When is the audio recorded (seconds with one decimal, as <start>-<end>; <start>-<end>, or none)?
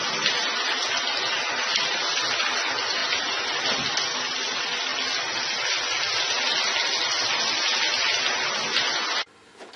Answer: 0.0-9.8